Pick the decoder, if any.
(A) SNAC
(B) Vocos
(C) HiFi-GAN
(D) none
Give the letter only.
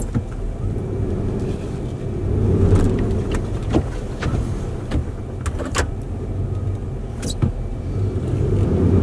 D